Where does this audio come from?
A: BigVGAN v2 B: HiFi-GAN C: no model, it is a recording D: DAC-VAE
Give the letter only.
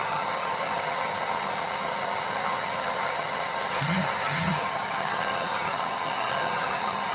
B